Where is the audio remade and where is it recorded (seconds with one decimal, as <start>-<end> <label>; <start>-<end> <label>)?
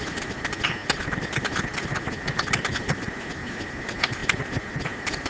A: 0.0-5.3 recorded